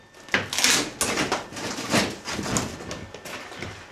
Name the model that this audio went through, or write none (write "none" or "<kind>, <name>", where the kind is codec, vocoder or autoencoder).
none